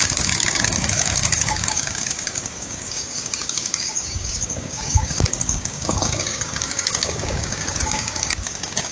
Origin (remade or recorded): remade